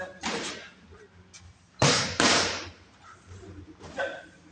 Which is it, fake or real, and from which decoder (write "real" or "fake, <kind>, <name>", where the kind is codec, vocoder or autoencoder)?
fake, vocoder, BigVGAN v2